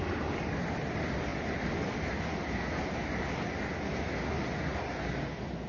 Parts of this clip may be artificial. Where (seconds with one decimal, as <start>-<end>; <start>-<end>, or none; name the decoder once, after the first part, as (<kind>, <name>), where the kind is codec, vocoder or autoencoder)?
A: none